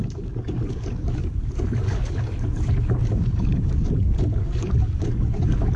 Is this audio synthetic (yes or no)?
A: yes